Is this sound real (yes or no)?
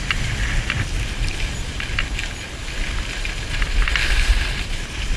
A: yes